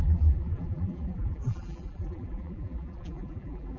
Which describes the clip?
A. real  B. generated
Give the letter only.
B